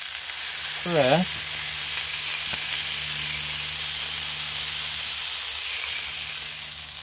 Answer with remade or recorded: recorded